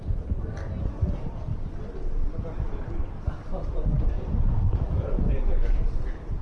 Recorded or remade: recorded